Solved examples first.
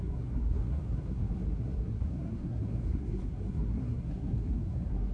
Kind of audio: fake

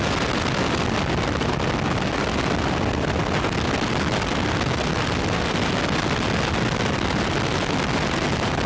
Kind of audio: real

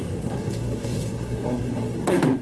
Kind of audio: fake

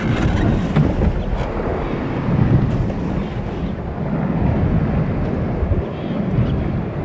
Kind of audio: real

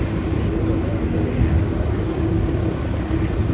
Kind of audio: real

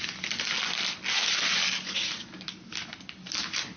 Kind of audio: real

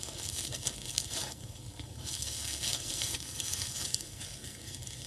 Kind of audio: fake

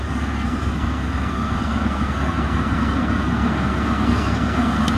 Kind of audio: fake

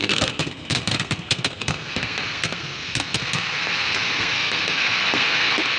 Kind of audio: fake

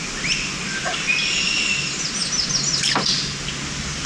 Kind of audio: real